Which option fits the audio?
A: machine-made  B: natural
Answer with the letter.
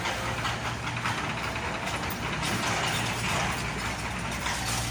B